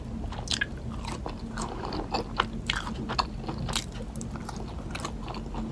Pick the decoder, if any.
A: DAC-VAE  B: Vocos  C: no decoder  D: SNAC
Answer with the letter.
C